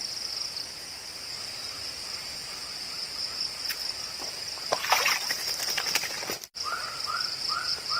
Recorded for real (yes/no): no